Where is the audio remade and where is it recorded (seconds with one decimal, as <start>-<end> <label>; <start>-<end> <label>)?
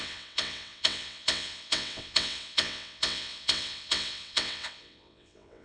0.0-5.6 remade